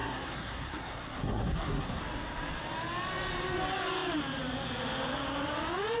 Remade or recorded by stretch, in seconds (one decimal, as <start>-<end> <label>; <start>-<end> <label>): 0.0-2.0 remade; 2.0-6.0 recorded